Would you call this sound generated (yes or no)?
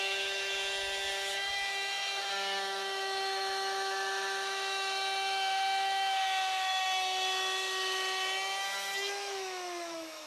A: yes